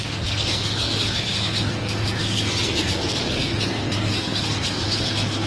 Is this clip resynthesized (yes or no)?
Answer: yes